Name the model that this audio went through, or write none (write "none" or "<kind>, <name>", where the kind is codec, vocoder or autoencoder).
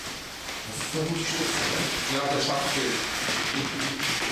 none